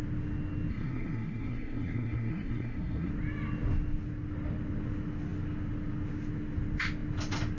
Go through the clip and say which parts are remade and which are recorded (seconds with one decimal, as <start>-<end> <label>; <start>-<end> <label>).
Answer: 0.0-0.7 recorded; 0.7-3.1 remade; 3.1-7.6 recorded